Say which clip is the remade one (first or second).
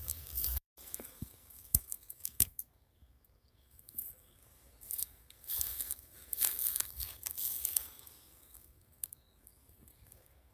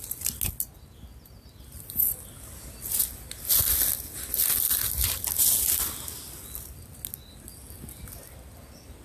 first